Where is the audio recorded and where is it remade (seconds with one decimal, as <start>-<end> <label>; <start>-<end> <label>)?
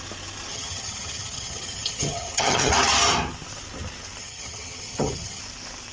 0.0-0.5 recorded; 0.5-2.7 remade; 2.7-4.2 recorded; 4.2-5.4 remade; 5.4-5.9 recorded